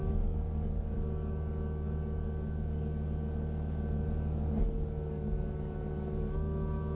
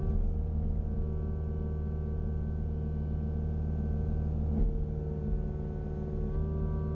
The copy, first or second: first